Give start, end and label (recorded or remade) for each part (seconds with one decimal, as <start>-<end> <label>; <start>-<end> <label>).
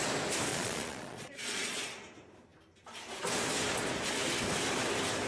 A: 0.0-0.5 recorded; 0.5-2.0 remade; 2.0-5.3 recorded